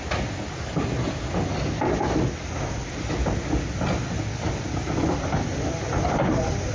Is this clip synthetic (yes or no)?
no